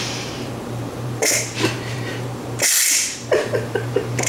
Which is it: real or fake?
fake